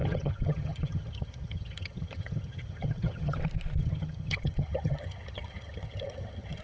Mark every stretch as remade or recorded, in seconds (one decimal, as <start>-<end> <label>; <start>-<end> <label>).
0.0-3.4 remade; 3.4-3.8 recorded; 3.8-6.6 remade